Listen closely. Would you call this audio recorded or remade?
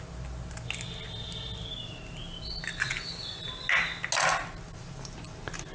recorded